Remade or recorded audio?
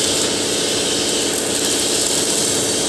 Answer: recorded